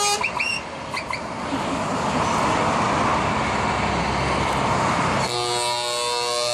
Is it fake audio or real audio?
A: real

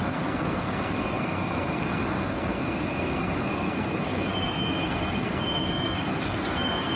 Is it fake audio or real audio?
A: fake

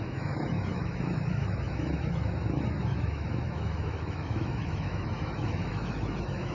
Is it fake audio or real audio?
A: fake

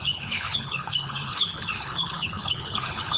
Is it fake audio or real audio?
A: fake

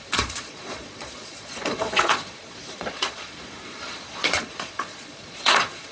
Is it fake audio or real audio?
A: fake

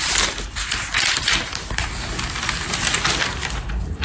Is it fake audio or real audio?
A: real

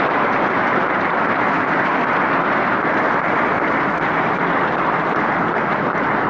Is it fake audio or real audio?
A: real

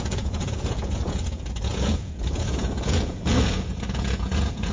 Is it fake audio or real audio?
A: fake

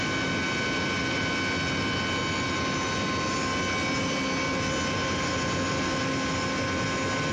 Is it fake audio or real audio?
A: real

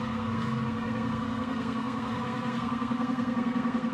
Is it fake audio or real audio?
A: fake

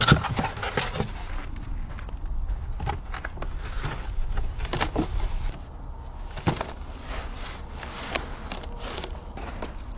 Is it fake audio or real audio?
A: real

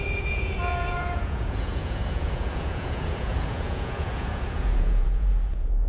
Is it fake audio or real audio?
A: fake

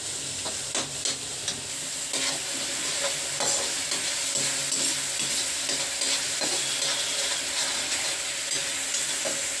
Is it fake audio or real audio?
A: real